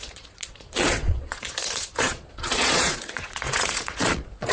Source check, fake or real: fake